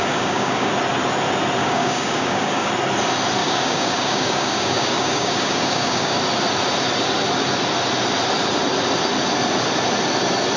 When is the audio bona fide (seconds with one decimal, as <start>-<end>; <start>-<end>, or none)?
0.7-1.6; 2.7-3.4; 6.2-10.6